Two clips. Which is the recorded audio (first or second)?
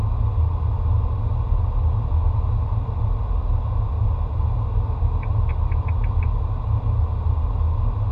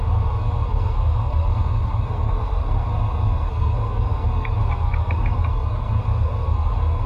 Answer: first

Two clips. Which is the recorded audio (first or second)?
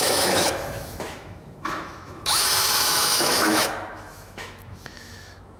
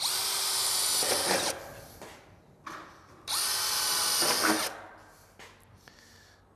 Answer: second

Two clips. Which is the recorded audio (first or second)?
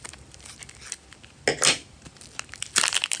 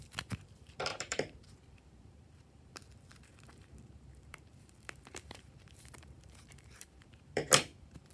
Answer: first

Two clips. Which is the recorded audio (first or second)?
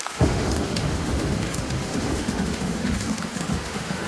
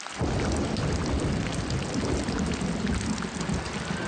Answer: second